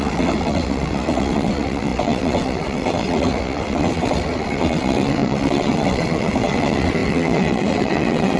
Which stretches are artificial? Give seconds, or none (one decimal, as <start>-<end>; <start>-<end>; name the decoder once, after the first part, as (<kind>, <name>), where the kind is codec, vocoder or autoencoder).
0.0-8.4 (vocoder, WaveNeXt)

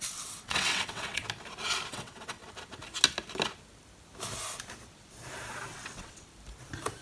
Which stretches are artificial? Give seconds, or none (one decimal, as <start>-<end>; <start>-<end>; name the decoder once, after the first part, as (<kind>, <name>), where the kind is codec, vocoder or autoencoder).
0.0-1.2 (vocoder, WaveNeXt); 1.9-2.4; 5.7-6.3

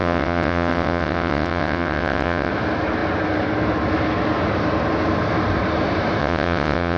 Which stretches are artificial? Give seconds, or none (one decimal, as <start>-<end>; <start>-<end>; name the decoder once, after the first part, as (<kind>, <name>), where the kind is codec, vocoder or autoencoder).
0.0-2.5 (vocoder, WaveNeXt); 6.2-7.0

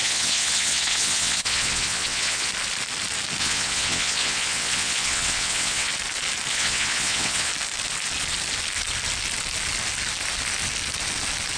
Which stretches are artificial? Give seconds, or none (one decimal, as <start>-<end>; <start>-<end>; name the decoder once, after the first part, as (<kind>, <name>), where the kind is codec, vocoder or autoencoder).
0.0-2.5 (vocoder, WaveNeXt); 3.4-5.9; 6.5-7.5